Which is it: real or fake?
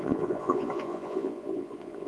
fake